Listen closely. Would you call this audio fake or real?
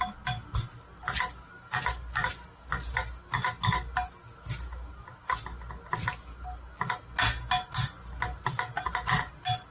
real